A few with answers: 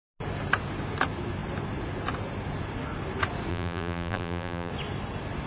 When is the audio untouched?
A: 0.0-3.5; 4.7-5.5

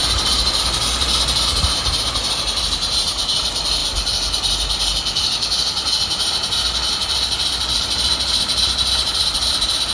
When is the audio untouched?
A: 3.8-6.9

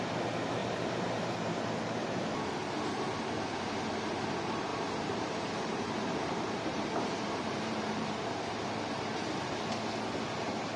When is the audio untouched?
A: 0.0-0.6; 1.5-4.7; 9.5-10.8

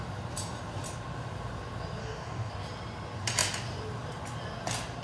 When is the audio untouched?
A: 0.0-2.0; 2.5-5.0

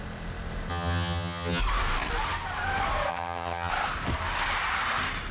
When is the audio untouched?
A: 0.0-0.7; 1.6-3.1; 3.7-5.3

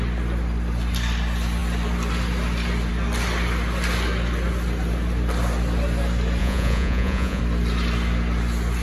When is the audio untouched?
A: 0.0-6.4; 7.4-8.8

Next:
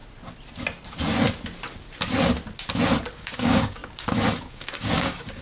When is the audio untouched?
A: 0.0-3.2; 3.8-4.5

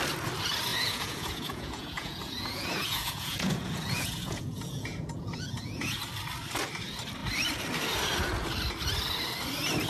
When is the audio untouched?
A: 0.0-0.7; 6.0-9.9